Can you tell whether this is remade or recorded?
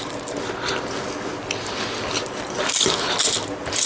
recorded